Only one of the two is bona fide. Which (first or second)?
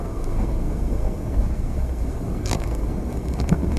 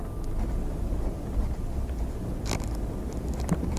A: second